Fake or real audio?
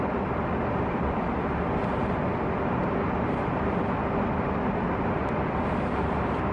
real